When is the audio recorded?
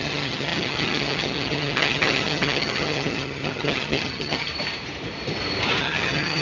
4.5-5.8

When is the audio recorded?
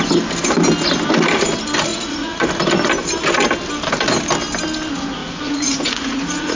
0.0-1.9; 2.5-5.2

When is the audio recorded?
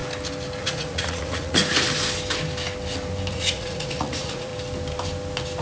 0.0-0.6; 1.6-3.3; 4.5-5.6